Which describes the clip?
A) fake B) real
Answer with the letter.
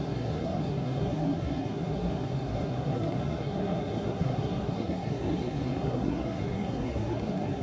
A